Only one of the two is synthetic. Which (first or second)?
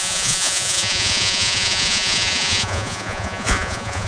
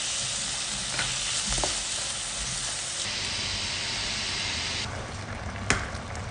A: first